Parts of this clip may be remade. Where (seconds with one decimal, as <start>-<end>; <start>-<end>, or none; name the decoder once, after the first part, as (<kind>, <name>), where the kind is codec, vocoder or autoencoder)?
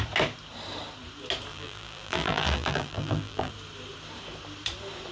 1.5-3.5 (vocoder, BigVGAN v2)